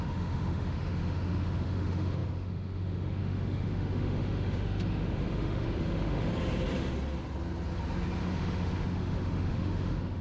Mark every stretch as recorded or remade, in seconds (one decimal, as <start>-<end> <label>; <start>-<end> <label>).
0.0-6.3 remade; 6.3-8.2 recorded; 8.2-10.2 remade